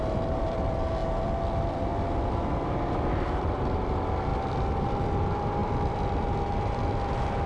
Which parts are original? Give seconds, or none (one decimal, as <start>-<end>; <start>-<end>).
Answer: 4.3-4.9